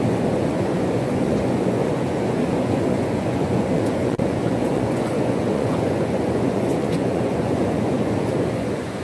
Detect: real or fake fake